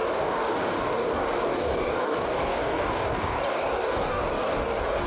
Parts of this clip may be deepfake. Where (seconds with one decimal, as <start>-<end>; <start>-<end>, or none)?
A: 0.0-5.1